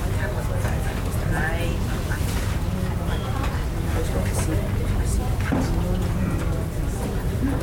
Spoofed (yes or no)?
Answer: no